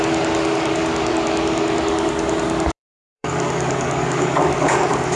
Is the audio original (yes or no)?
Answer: no